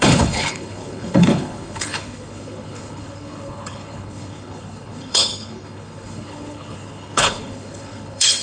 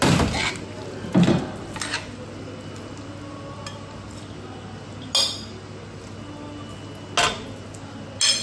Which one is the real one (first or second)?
second